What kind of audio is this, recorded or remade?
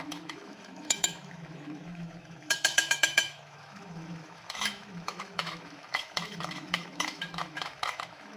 remade